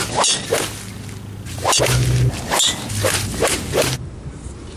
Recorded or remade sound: recorded